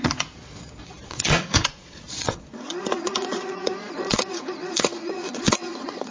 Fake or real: fake